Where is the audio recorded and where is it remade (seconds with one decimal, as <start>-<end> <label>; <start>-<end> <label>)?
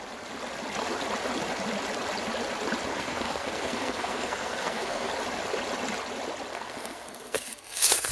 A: 0.0-2.9 recorded; 2.9-5.1 remade; 5.1-6.5 recorded; 6.5-8.1 remade